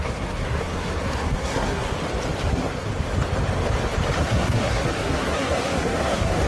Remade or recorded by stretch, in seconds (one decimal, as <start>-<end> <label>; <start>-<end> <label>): 0.0-1.9 remade; 1.9-2.5 recorded; 2.5-2.9 remade; 2.9-4.2 recorded; 4.2-6.5 remade